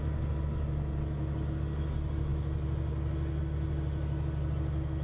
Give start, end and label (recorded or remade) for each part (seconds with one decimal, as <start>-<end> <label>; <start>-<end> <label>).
0.0-5.0 recorded